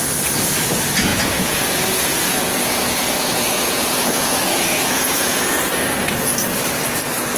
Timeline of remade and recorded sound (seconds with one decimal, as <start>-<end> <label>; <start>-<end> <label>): 0.0-1.1 recorded; 1.1-5.5 remade; 5.5-7.4 recorded